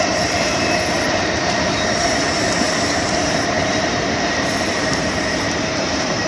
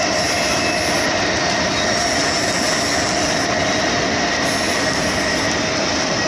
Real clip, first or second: second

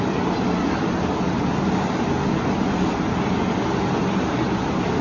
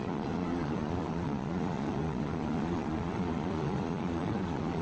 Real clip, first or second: first